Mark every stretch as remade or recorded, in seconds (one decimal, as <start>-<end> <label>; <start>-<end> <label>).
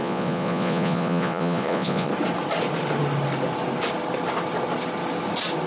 0.0-2.1 remade; 2.1-5.7 recorded